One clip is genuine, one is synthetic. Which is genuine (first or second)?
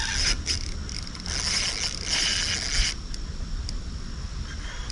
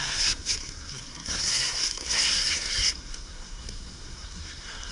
first